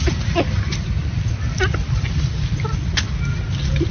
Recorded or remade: recorded